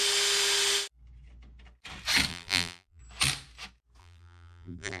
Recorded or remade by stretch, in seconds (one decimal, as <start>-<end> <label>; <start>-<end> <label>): 0.0-2.3 recorded; 2.3-3.0 remade; 3.0-4.0 recorded; 4.0-5.0 remade